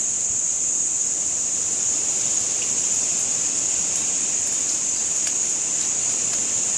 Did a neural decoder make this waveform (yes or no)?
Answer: no